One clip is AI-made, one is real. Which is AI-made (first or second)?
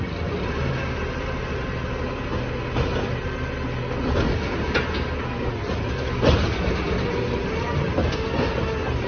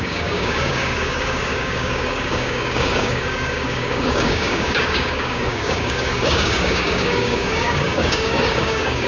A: second